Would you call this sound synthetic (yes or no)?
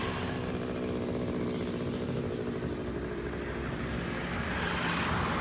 no